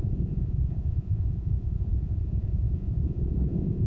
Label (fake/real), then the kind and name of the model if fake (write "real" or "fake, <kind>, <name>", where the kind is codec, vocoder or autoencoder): fake, vocoder, Vocos